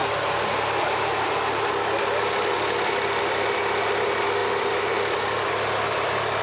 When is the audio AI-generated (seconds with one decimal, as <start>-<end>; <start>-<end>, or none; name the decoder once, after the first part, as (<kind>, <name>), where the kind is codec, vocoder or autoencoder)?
none